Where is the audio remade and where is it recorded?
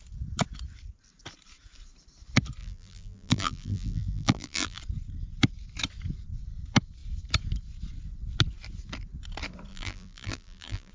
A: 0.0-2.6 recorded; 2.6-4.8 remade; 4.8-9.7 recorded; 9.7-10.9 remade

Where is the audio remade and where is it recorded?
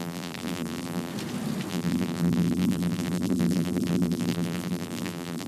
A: 0.0-1.1 remade; 1.1-1.7 recorded; 1.7-5.5 remade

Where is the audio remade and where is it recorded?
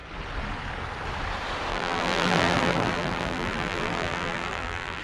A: 0.0-1.7 recorded; 1.7-5.0 remade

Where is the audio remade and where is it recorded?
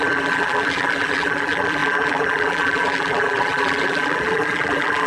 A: 0.0-5.1 remade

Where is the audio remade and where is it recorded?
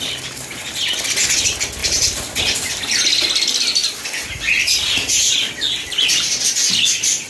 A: 0.0-1.8 recorded; 1.8-2.4 remade; 2.4-3.8 recorded; 3.8-7.3 remade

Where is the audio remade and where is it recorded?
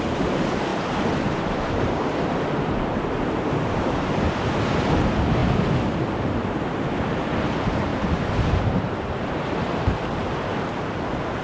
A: 0.0-0.7 recorded; 0.7-4.5 remade; 4.5-7.9 recorded; 7.9-10.4 remade; 10.4-11.4 recorded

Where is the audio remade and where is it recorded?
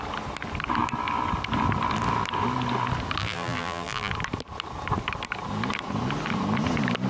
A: 0.0-3.2 recorded; 3.2-4.1 remade; 4.1-7.1 recorded